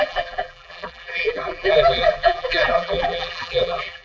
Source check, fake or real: fake